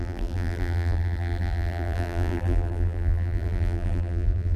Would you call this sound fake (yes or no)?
yes